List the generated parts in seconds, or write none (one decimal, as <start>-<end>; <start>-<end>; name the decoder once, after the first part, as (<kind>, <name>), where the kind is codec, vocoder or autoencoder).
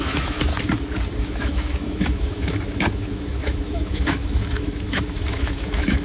0.0-0.5 (autoencoder, DAC-VAE); 1.2-6.0